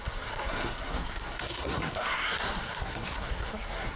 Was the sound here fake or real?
fake